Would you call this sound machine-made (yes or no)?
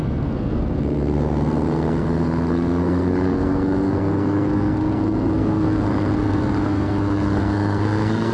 yes